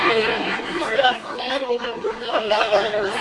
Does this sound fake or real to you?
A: fake